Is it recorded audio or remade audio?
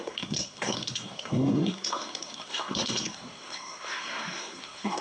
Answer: remade